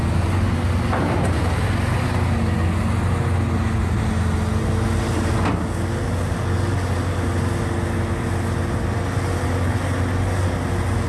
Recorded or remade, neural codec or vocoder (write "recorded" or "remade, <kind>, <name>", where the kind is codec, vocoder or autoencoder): recorded